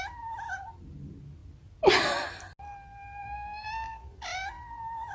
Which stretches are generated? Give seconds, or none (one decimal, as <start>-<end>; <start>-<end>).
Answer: none